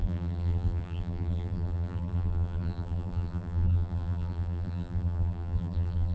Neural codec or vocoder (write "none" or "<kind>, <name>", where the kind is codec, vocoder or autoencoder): vocoder, BigVGAN v2